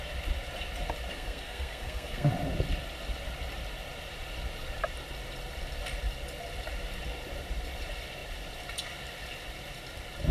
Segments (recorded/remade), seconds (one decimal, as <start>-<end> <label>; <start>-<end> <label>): 0.0-1.1 recorded; 1.1-2.3 remade; 2.3-10.3 recorded